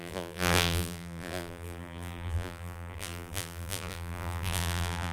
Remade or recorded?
remade